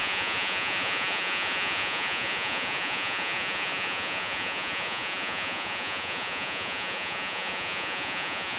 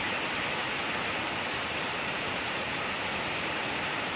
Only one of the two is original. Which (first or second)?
second